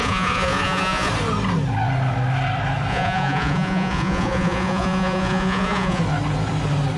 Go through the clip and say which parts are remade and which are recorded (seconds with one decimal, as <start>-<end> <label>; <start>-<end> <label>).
0.0-1.1 remade; 1.1-2.9 recorded; 2.9-6.0 remade; 6.0-7.0 recorded